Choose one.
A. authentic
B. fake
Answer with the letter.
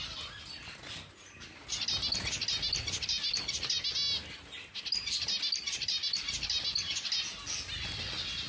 A